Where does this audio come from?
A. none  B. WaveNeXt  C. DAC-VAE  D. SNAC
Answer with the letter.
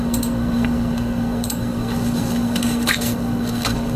D